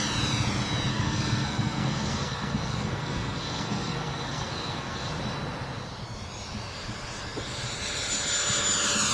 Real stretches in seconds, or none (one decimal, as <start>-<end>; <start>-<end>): 0.0-0.9; 5.1-9.1